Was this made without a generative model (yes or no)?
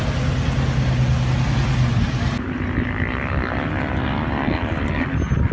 yes